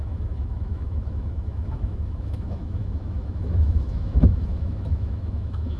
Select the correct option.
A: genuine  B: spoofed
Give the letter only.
B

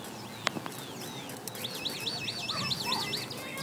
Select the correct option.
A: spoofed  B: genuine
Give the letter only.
B